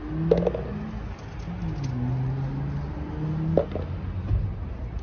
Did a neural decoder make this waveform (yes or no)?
no